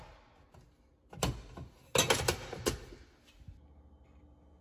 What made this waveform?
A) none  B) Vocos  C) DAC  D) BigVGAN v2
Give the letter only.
A